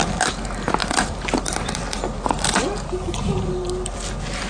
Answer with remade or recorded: recorded